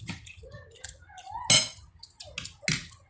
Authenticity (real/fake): real